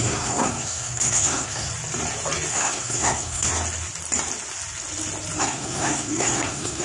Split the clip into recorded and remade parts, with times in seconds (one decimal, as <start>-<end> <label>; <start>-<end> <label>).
0.0-1.7 remade; 1.7-2.5 recorded; 2.5-3.5 remade; 3.5-5.4 recorded; 5.4-6.8 remade